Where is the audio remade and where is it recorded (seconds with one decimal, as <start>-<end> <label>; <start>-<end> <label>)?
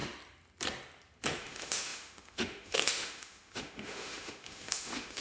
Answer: 0.0-1.4 recorded; 1.4-5.2 remade